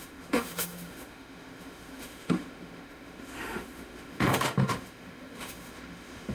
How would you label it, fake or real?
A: fake